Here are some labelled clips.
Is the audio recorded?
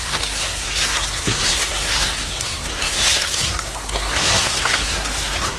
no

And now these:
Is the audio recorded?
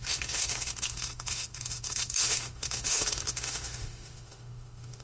no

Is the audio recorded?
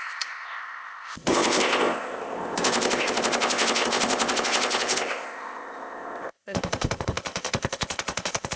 no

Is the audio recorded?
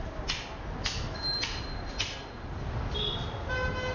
yes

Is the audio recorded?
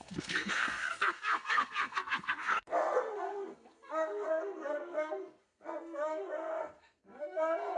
no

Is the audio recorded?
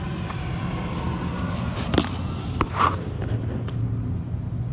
yes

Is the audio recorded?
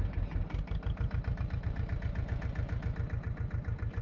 yes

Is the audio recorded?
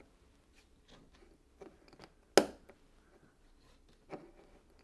yes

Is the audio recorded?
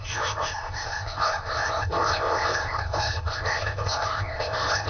no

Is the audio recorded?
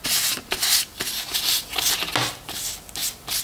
yes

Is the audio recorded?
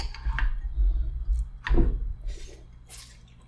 yes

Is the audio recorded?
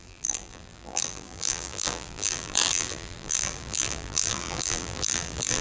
no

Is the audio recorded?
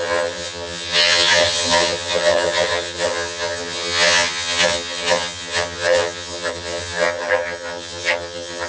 no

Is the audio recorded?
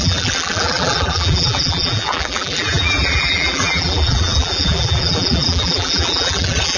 no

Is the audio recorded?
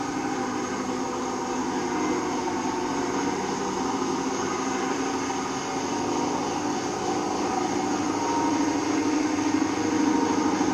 yes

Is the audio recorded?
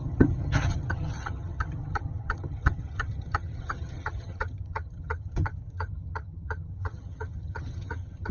no